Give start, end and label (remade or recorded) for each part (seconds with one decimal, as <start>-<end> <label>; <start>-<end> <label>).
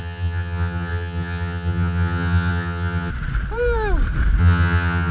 0.0-3.1 remade; 3.1-4.4 recorded; 4.4-5.1 remade